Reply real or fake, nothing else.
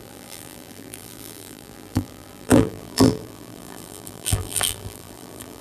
fake